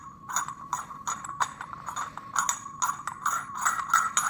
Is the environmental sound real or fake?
real